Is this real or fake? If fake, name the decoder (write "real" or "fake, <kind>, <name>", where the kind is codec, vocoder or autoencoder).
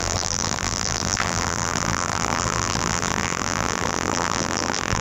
fake, vocoder, BigVGAN v2